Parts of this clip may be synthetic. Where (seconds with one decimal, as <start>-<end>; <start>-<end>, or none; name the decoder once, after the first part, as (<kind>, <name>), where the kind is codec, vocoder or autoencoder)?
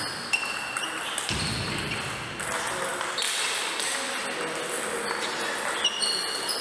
none